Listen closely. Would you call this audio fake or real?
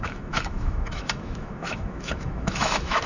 fake